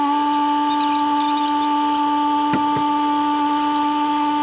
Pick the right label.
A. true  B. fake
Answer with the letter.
A